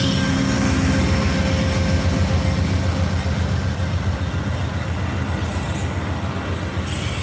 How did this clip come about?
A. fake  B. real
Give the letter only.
B